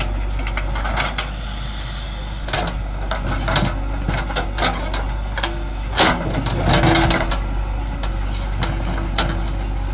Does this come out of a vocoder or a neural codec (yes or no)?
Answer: no